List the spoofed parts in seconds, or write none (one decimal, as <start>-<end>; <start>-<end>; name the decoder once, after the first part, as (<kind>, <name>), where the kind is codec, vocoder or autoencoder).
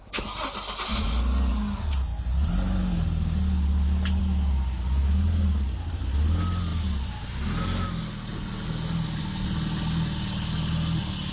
none